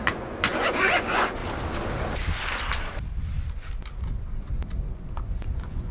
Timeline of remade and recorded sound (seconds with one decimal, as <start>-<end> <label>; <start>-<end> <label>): 0.0-1.4 remade; 1.4-4.9 recorded; 4.9-5.9 remade